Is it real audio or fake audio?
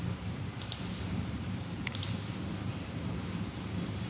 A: fake